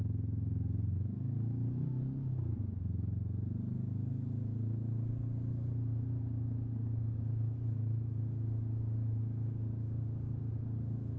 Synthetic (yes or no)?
no